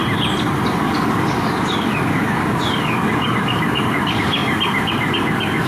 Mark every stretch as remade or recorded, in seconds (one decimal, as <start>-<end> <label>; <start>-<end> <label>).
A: 0.0-0.8 recorded; 0.8-5.7 remade